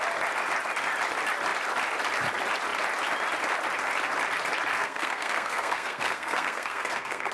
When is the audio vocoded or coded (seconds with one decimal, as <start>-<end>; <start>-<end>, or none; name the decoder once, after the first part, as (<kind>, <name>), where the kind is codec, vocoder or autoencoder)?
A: 4.7-7.3 (codec, SNAC)